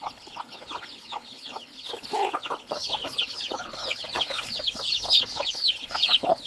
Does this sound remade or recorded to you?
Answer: remade